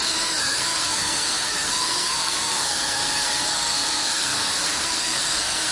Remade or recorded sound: remade